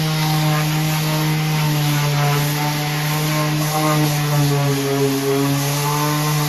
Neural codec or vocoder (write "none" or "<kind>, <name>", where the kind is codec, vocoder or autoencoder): none